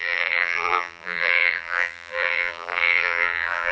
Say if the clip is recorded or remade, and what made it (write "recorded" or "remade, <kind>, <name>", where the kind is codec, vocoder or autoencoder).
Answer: remade, vocoder, BigVGAN v2